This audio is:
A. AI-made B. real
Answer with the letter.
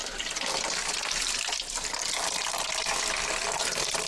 B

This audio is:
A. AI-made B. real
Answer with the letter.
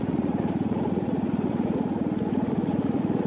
A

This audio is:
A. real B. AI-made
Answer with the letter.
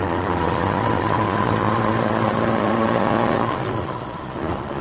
B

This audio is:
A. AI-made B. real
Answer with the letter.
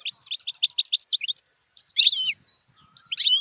B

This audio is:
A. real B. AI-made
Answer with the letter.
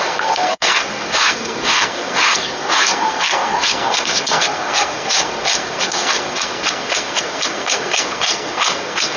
B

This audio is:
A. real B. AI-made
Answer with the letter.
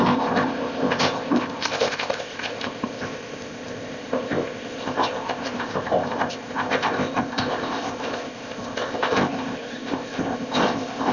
B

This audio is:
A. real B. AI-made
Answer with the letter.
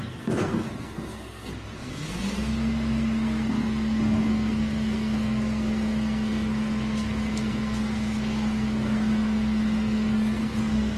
B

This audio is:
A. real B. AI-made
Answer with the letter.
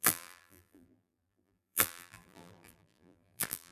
B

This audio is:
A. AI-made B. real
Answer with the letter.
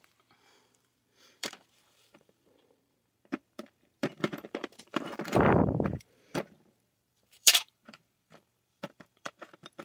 A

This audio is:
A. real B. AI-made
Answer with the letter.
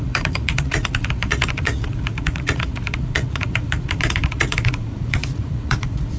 B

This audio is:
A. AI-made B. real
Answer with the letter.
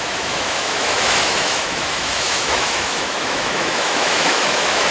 A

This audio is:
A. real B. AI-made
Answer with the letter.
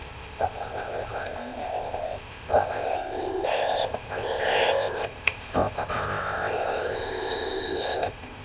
B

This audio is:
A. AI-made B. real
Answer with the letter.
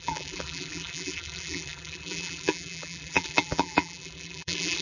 A